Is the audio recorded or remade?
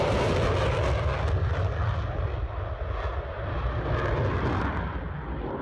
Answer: recorded